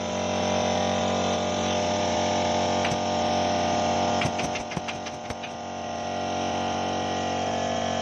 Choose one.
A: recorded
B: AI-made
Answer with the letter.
A